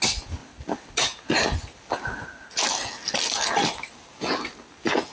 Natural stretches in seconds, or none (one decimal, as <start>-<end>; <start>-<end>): 0.0-5.1